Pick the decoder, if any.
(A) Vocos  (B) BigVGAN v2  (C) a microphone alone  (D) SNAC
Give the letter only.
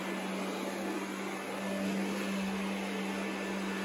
C